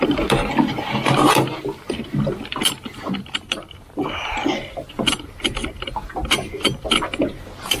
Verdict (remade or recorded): recorded